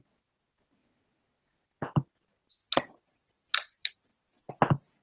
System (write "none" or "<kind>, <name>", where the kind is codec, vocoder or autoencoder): none